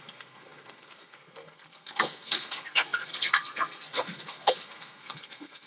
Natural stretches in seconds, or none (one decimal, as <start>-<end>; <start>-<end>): none